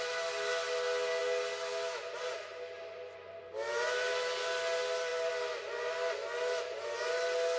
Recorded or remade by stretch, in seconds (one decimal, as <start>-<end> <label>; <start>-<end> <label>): 0.0-7.6 recorded